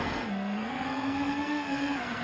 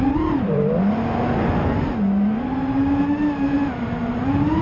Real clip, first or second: second